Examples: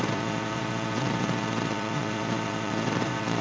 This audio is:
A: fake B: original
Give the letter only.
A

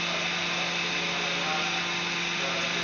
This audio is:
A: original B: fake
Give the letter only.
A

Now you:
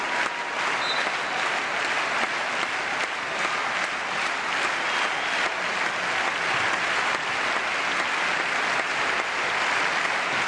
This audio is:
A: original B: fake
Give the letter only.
A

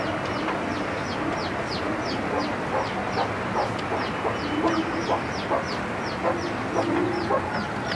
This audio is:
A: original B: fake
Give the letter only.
A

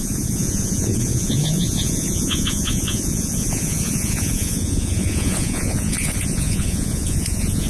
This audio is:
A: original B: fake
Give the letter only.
B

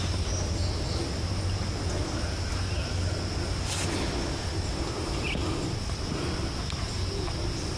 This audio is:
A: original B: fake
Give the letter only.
A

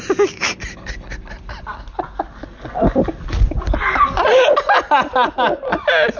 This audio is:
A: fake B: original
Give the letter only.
B